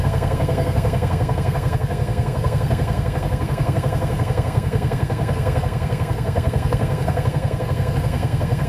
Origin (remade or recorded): remade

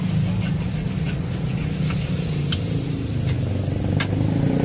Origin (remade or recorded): recorded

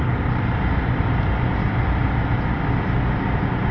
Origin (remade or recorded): recorded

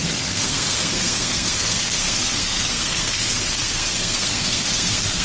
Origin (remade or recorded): remade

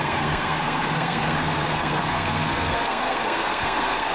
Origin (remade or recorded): remade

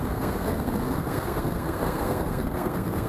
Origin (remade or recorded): remade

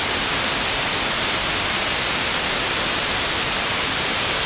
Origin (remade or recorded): recorded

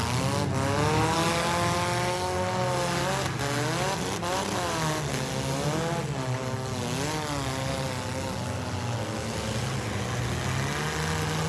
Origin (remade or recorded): recorded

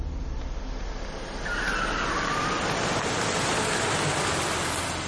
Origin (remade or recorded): recorded